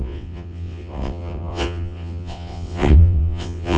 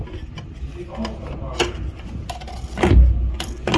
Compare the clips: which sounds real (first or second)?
second